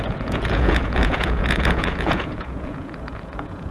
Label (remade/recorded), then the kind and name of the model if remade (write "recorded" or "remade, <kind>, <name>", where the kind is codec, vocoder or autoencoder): remade, vocoder, Vocos